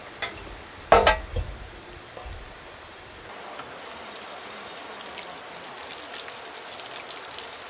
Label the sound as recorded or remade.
recorded